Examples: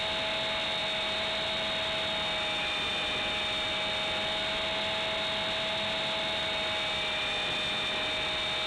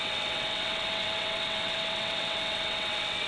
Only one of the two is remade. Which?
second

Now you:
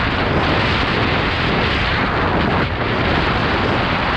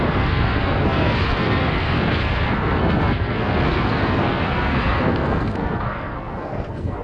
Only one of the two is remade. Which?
second